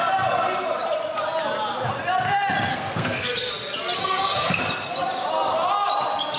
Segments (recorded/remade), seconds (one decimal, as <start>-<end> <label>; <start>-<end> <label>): 0.0-2.7 recorded; 2.7-3.5 remade; 3.5-4.0 recorded; 4.0-4.6 remade; 4.6-6.4 recorded